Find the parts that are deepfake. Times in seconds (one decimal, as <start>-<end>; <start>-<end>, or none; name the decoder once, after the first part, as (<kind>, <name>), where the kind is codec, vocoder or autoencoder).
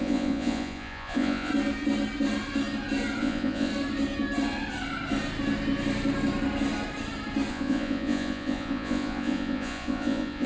0.0-1.5 (vocoder, Vocos); 3.2-3.7; 7.5-10.5